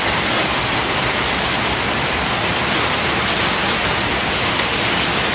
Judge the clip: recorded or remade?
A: recorded